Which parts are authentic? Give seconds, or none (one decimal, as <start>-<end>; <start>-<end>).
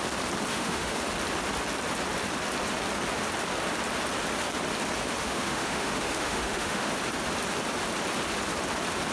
0.0-0.5; 1.0-5.2; 6.9-9.1